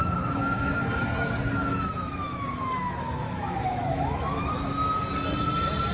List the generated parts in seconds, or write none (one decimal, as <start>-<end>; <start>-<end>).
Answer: 0.0-1.0; 1.6-5.1